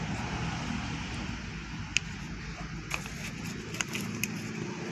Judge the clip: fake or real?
real